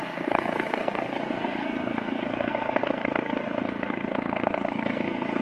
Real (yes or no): no